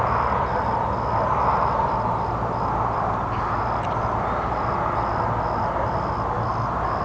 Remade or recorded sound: recorded